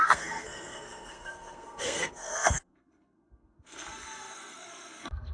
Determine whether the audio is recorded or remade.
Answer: remade